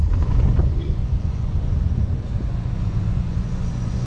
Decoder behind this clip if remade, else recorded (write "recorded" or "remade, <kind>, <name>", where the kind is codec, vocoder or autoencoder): remade, vocoder, Vocos